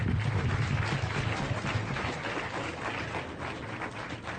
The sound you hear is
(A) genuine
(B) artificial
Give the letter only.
A